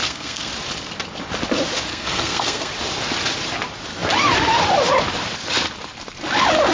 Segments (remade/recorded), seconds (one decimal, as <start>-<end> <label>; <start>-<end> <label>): 0.0-0.5 remade; 0.5-1.9 recorded; 1.9-2.7 remade; 2.7-6.7 recorded